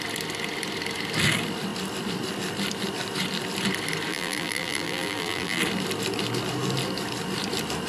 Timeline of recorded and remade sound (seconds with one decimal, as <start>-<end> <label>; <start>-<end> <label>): 0.0-4.1 recorded; 4.1-5.6 remade; 5.6-7.9 recorded